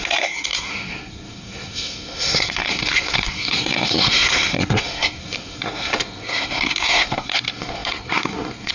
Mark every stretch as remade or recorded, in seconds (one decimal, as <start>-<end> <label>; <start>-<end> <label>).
0.0-8.7 remade